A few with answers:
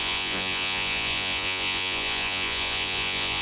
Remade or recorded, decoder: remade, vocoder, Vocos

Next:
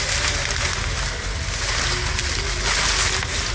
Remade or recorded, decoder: recorded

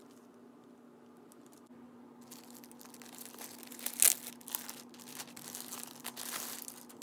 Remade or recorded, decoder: recorded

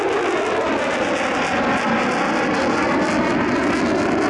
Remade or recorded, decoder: recorded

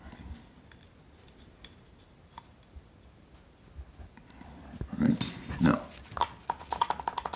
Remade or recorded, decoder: recorded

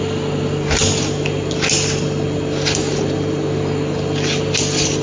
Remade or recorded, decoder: recorded